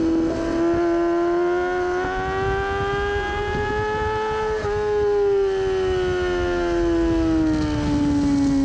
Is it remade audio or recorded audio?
recorded